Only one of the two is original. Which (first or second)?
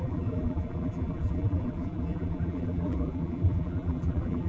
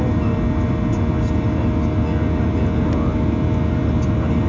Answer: second